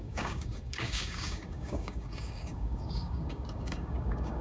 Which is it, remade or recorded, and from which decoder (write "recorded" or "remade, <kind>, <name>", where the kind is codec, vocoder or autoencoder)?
remade, codec, DAC